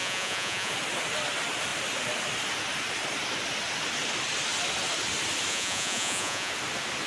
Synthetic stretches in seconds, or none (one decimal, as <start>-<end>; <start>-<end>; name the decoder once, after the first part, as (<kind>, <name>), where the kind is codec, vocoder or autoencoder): 0.0-0.7 (vocoder, Vocos); 5.5-6.5